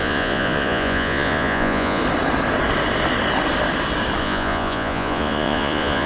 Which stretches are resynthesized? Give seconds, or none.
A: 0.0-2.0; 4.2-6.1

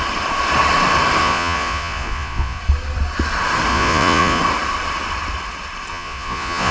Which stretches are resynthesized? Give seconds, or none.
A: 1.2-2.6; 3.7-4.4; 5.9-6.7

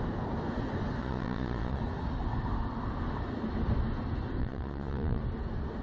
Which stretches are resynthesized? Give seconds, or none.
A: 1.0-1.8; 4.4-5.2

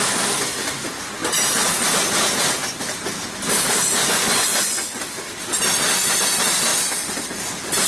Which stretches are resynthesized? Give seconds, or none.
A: 4.0-5.0

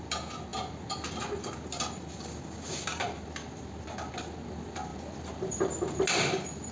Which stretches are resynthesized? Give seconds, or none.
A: none

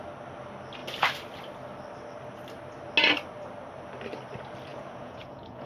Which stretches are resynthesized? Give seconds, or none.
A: 4.7-5.7

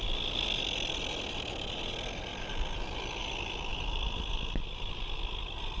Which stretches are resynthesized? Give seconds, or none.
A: none